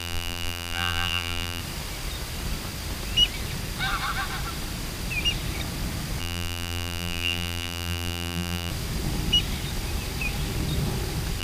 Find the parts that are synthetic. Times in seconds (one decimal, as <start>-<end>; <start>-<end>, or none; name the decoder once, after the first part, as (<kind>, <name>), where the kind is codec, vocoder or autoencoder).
0.0-1.6 (vocoder, BigVGAN v2); 6.2-8.7